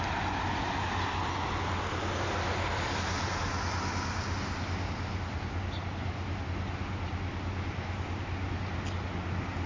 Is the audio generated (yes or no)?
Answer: no